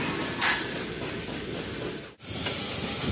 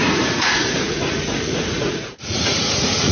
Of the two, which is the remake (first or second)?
second